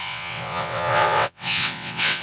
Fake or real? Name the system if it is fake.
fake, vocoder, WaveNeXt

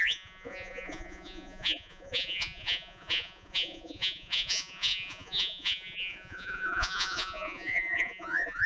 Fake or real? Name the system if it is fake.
fake, vocoder, Vocos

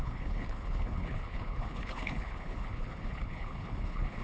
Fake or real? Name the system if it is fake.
fake, codec, HILCodec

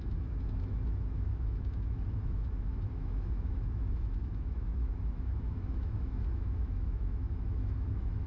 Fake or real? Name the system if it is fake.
fake, autoencoder, DAC-VAE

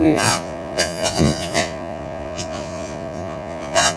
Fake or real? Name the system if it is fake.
fake, vocoder, Vocos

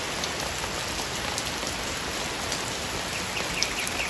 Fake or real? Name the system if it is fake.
real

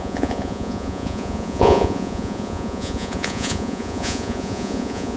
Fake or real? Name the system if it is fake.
fake, vocoder, Vocos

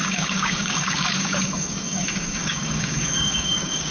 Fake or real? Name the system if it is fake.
fake, codec, DAC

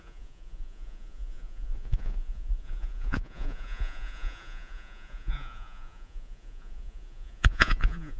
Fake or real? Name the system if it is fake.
fake, vocoder, Vocos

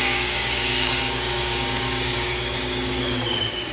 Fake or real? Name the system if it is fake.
fake, codec, DAC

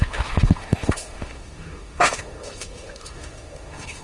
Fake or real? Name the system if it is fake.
fake, autoencoder, DAC-VAE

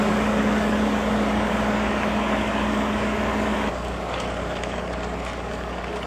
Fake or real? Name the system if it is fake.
fake, codec, DAC